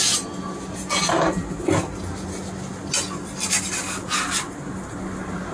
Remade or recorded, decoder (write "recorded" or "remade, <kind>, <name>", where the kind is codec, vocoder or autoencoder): recorded